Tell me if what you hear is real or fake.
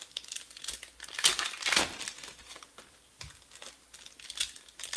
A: real